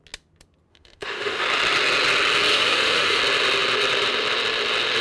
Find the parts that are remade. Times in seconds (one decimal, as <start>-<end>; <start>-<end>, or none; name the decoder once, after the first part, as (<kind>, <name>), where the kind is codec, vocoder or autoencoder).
0.7-1.4 (autoencoder, DAC-VAE); 2.5-3.2